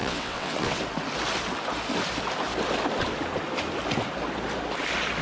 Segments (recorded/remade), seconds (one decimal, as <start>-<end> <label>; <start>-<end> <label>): 0.0-0.8 remade; 0.8-5.2 recorded